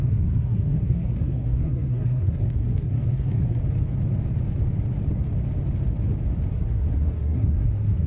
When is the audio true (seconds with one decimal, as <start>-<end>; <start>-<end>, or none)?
3.6-6.5